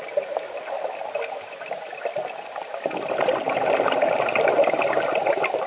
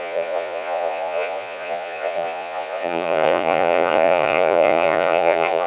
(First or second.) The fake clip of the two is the second